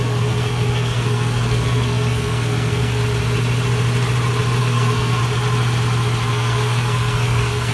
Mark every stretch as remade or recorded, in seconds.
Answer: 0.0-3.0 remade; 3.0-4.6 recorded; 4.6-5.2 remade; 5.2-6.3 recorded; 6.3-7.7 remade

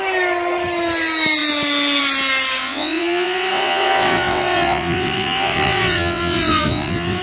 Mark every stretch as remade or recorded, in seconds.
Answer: 0.0-2.6 recorded; 2.6-7.2 remade

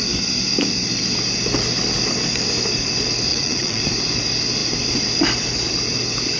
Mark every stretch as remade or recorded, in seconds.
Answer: 0.0-3.3 recorded; 3.3-3.8 remade; 3.8-6.4 recorded

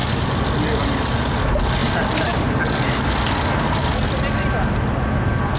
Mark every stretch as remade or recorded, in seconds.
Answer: 0.0-5.6 recorded

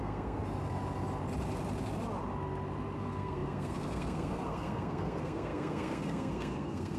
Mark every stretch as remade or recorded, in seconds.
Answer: 0.0-0.4 remade; 0.4-3.0 recorded; 3.0-7.0 remade

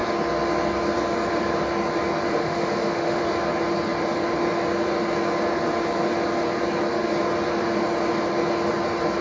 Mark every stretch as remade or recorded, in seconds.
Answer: 0.0-2.3 recorded; 2.3-3.2 remade; 3.2-9.2 recorded

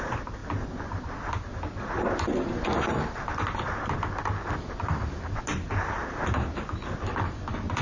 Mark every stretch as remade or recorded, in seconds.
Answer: 0.0-6.0 recorded; 6.0-7.8 remade